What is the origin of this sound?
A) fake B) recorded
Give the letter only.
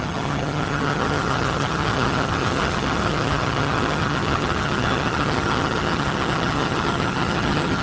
A